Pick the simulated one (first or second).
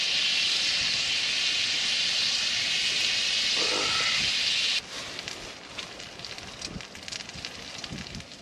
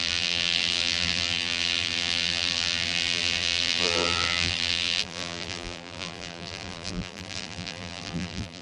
second